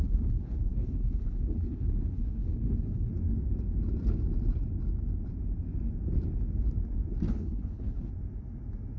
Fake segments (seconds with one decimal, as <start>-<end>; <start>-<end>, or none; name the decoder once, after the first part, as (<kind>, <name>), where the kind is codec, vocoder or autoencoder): 0.0-3.1 (codec, HILCodec); 7.3-8.1

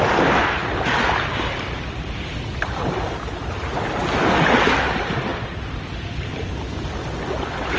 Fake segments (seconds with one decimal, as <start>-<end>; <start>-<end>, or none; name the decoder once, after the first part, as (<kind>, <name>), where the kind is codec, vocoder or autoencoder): 0.6-3.3 (vocoder, BigVGAN v2)

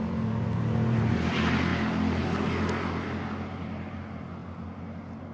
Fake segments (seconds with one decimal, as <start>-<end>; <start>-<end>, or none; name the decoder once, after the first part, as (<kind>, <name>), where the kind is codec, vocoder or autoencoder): none

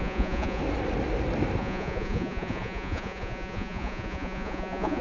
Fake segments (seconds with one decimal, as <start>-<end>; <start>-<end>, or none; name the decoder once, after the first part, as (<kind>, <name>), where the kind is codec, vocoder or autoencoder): 0.0-0.6 (vocoder, Vocos); 1.6-5.0

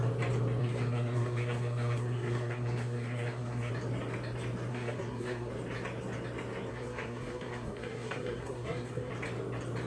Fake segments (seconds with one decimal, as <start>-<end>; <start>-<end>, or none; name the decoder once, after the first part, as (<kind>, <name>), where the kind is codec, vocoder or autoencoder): 0.6-3.7 (codec, SNAC); 4.7-5.5; 6.7-9.1

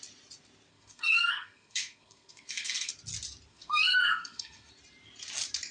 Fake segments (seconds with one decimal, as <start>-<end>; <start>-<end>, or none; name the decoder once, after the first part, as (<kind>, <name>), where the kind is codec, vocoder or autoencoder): 0.7-2.9 (codec, SNAC); 3.5-4.7

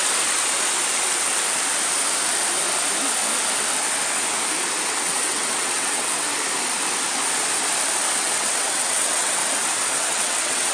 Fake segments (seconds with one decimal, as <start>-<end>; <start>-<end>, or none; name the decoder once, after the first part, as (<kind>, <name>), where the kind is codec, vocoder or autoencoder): 4.9-6.3 (vocoder, WaveNeXt); 8.2-9.4; 9.9-10.7

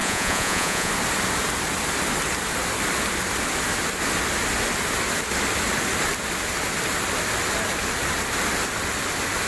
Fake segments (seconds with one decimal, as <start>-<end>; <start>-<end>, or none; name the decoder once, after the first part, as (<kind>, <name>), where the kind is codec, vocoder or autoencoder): 0.0-0.9 (vocoder, Vocos)